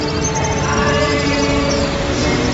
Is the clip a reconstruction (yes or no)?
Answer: no